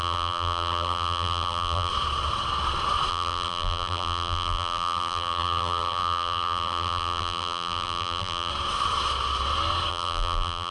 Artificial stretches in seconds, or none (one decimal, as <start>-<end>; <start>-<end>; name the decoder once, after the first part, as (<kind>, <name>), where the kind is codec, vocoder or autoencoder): 0.0-1.9 (vocoder, BigVGAN v2); 3.1-8.5; 9.9-10.7